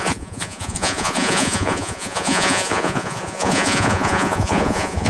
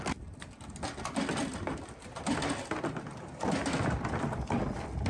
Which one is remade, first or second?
first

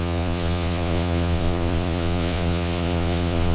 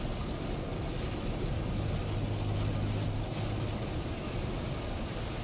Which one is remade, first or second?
first